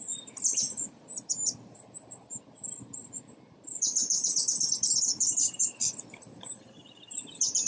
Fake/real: fake